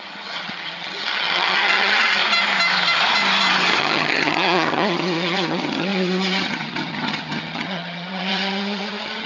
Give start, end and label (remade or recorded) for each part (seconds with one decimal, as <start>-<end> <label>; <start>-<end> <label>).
0.0-2.2 remade; 2.2-3.8 recorded; 3.8-9.3 remade